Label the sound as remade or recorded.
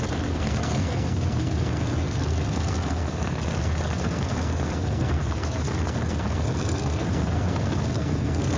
remade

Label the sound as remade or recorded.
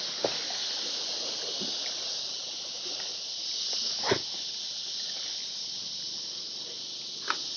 recorded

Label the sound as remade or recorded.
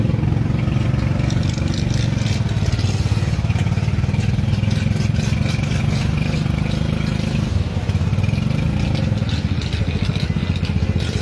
recorded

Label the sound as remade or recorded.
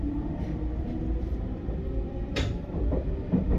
remade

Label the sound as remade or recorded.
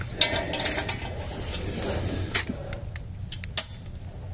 recorded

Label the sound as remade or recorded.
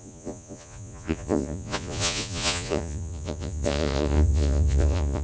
remade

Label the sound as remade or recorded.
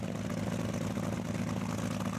recorded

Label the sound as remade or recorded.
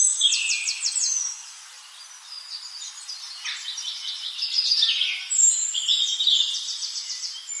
recorded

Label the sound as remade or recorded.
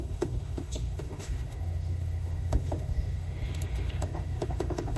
remade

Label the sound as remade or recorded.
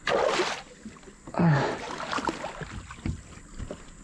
recorded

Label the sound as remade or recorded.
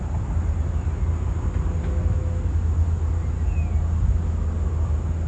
recorded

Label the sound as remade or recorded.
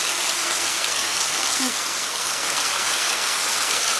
remade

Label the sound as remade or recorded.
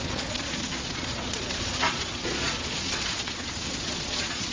remade